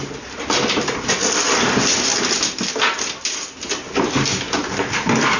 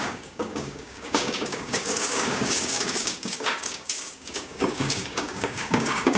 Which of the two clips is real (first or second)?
first